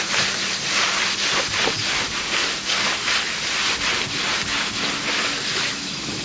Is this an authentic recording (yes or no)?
yes